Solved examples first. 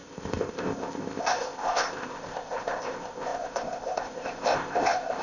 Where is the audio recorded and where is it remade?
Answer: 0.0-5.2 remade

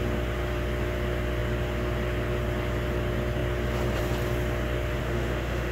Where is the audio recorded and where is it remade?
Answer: 0.0-5.0 recorded; 5.0-5.7 remade

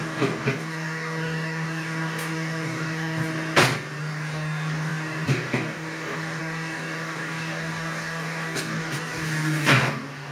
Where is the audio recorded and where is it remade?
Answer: 0.0-3.3 remade; 3.3-4.0 recorded; 4.0-10.3 remade

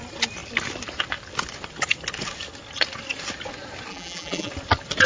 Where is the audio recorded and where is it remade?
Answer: 0.0-3.9 recorded; 3.9-4.5 remade; 4.5-5.1 recorded

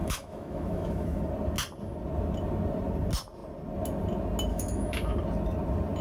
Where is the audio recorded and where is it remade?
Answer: 0.0-1.2 remade; 1.2-4.5 recorded; 4.5-5.1 remade; 5.1-6.0 recorded

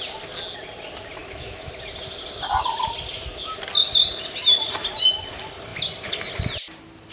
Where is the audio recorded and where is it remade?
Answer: 0.0-1.2 recorded; 1.2-1.7 remade; 1.7-7.1 recorded

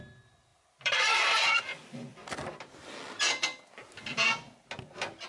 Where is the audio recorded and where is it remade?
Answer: 0.0-0.5 recorded; 0.5-1.6 remade; 1.6-5.3 recorded